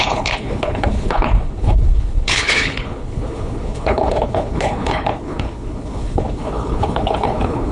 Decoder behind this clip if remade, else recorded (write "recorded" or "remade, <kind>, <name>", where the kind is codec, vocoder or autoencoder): remade, codec, HILCodec